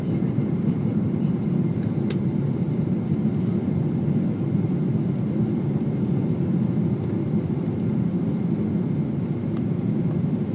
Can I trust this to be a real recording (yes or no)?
yes